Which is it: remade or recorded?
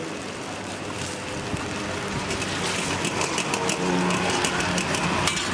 recorded